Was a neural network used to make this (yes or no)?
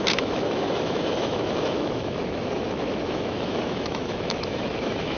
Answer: yes